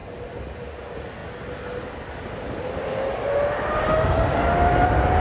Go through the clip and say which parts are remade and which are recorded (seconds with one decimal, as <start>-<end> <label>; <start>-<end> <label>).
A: 0.0-5.2 recorded